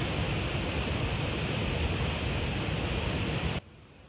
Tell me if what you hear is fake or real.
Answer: real